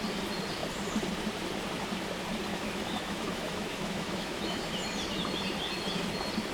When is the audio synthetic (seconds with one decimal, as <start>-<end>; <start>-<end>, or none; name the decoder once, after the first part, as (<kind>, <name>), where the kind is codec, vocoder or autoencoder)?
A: 2.5-4.6 (autoencoder, DAC-VAE)